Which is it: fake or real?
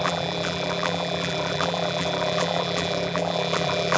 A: fake